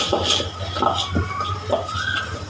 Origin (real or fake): fake